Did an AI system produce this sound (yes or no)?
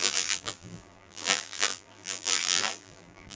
yes